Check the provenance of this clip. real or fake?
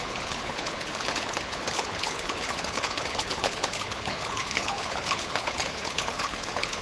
fake